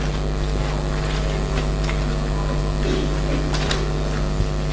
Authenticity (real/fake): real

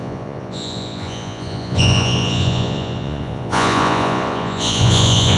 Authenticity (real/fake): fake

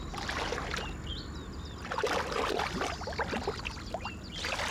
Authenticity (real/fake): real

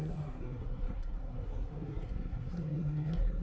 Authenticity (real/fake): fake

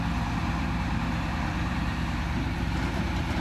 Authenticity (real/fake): fake